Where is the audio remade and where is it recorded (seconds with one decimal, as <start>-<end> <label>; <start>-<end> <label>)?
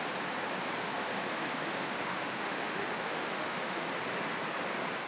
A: 0.0-0.8 recorded; 0.8-3.9 remade; 3.9-5.1 recorded